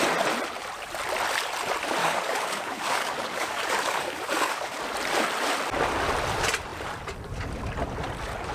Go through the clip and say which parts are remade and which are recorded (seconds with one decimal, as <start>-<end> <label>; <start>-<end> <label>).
0.0-2.0 recorded; 2.0-4.8 remade; 4.8-8.5 recorded